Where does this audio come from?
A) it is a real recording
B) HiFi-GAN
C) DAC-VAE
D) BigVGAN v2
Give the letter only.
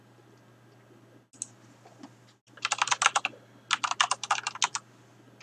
A